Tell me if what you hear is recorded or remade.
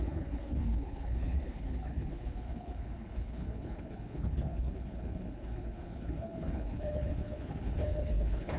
remade